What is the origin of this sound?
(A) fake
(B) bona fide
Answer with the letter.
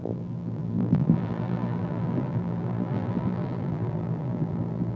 A